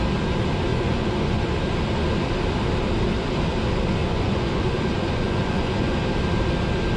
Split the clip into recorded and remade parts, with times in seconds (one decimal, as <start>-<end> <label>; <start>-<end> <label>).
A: 0.0-0.7 recorded; 0.7-1.4 remade; 1.4-4.0 recorded; 4.0-6.0 remade; 6.0-7.0 recorded